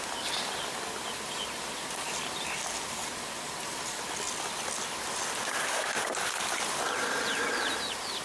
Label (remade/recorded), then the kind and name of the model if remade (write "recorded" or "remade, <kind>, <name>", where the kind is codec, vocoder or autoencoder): recorded